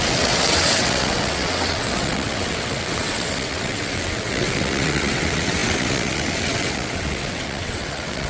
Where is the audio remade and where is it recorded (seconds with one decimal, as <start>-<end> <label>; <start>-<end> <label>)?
0.0-8.3 remade